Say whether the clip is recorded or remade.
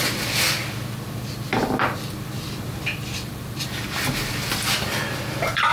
remade